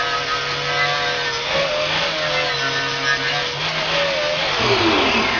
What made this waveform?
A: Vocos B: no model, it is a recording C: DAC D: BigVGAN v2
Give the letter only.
B